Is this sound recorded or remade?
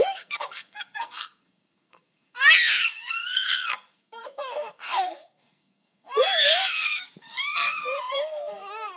remade